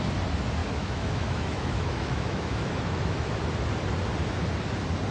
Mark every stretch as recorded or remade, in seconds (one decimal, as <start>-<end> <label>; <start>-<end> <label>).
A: 0.0-0.6 recorded; 0.6-3.4 remade; 3.4-5.1 recorded